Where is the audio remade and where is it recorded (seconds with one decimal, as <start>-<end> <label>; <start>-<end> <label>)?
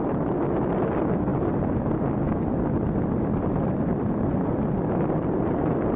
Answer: 0.0-6.0 recorded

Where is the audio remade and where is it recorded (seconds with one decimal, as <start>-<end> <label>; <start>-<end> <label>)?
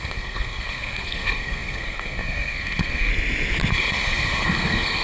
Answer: 0.0-3.1 remade; 3.1-3.7 recorded; 3.7-5.0 remade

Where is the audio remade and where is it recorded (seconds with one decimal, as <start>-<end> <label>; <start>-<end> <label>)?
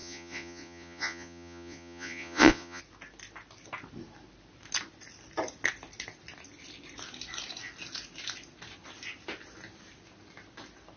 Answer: 0.0-2.8 remade; 2.8-11.0 recorded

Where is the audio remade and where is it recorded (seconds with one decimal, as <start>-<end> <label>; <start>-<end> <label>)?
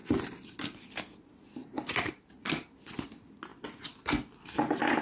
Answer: 0.0-5.0 recorded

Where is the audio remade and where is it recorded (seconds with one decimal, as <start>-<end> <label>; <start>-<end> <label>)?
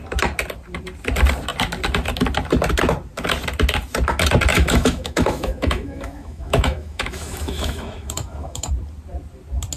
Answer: 0.0-4.5 recorded; 4.5-8.7 remade; 8.7-9.8 recorded